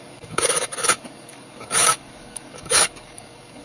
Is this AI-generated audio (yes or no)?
yes